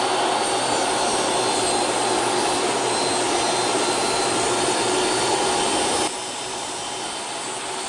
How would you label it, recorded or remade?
recorded